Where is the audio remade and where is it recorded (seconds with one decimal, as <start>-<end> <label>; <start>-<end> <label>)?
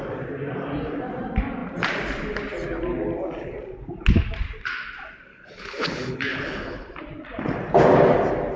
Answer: 0.0-5.3 recorded; 5.3-6.9 remade; 6.9-8.6 recorded